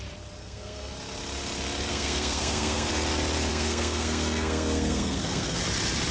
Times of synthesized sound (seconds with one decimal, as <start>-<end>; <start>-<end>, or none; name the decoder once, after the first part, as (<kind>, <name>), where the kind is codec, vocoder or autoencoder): 0.4-0.9 (codec, SNAC); 1.9-2.9; 3.5-5.6